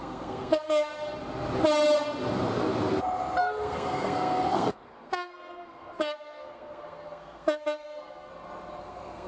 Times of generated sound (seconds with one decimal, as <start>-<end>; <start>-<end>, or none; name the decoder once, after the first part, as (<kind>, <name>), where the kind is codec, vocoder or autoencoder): 0.0-0.9 (codec, SNAC); 3.4-8.3; 8.8-9.3